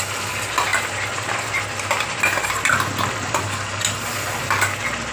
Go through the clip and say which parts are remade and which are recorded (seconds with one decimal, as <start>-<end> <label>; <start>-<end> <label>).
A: 0.0-5.1 recorded